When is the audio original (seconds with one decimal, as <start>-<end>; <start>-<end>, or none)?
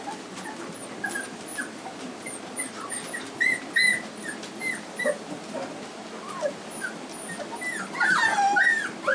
0.0-9.1